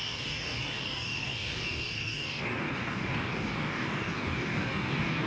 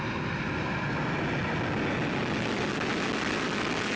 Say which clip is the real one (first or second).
second